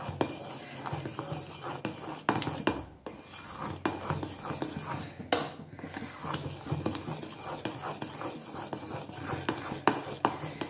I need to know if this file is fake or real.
real